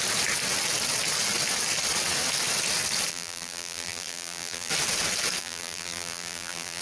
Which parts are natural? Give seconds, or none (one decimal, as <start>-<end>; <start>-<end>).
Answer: 0.0-3.1; 4.7-5.4